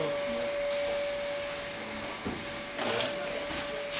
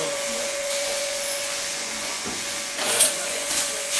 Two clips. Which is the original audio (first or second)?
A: first